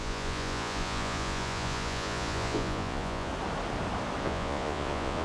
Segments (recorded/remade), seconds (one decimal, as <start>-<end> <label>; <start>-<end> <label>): 0.0-3.3 remade; 3.3-4.2 recorded; 4.2-5.2 remade